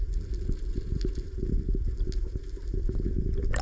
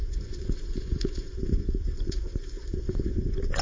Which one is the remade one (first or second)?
second